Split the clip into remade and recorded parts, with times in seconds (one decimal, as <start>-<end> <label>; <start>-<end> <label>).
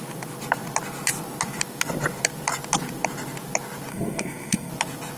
0.0-3.9 recorded; 3.9-4.7 remade; 4.7-5.2 recorded